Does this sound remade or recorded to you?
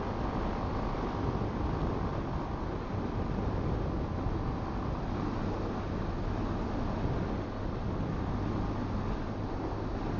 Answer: recorded